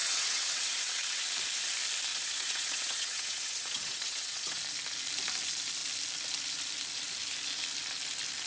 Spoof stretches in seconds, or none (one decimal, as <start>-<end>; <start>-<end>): 0.0-1.2; 2.1-4.6